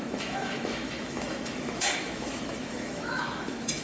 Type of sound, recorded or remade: remade